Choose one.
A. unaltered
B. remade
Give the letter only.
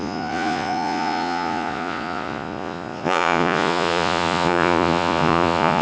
B